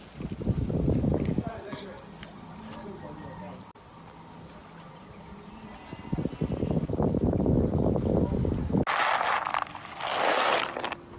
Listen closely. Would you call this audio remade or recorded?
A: recorded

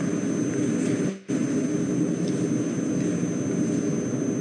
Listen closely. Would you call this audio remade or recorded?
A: recorded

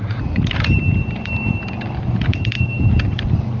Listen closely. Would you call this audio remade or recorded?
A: remade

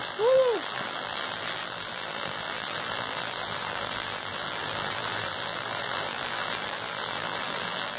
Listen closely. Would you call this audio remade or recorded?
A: remade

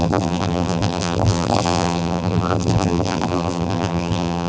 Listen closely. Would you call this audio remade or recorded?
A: remade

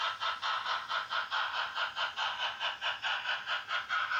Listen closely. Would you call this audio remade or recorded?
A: recorded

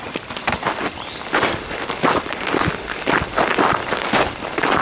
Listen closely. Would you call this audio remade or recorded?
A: recorded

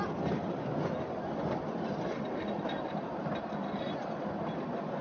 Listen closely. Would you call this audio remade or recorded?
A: recorded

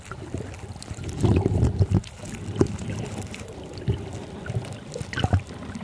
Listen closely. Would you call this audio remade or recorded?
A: remade